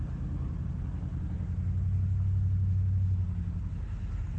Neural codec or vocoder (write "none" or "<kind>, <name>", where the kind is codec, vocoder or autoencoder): none